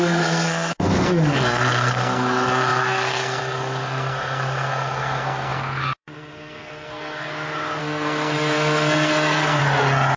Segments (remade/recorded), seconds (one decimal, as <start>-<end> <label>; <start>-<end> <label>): 0.0-7.3 remade; 7.3-7.8 recorded; 7.8-9.6 remade; 9.6-10.2 recorded